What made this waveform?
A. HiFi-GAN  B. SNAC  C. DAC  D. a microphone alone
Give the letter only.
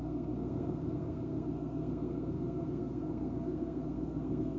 B